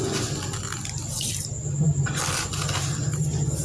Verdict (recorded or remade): recorded